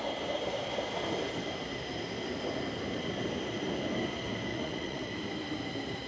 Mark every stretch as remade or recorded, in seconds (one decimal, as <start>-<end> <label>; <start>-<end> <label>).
0.0-4.5 recorded; 4.5-5.1 remade; 5.1-6.1 recorded